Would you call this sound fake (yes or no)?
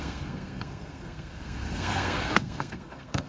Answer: yes